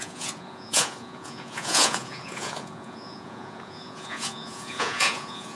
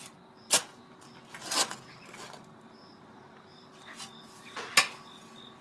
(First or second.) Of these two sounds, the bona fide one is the second